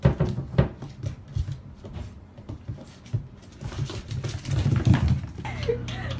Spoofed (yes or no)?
no